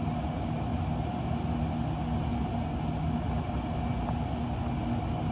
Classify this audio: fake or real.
real